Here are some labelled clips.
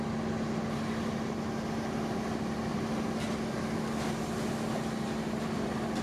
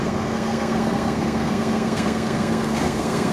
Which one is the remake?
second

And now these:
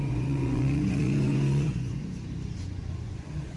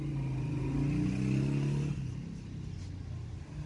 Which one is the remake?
first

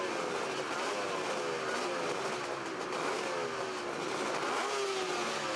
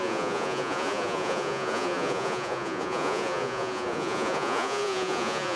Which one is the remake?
second